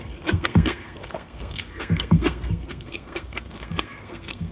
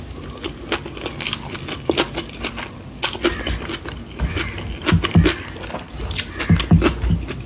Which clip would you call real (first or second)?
second